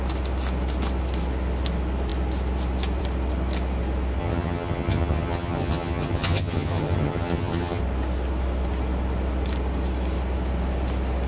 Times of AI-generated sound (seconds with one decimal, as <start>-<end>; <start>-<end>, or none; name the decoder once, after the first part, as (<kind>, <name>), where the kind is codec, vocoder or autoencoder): 4.2-7.8 (vocoder, HiFi-GAN)